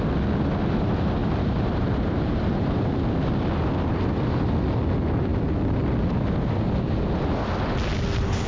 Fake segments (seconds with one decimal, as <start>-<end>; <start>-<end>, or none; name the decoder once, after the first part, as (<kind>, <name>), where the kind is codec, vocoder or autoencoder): 1.2-3.5 (vocoder, BigVGAN v2)